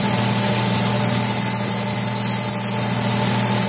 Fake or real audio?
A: real